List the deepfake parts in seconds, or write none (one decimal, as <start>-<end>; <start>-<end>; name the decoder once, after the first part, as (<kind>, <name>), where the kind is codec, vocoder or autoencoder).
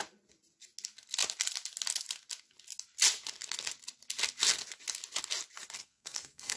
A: 5.8-6.6 (codec, SNAC)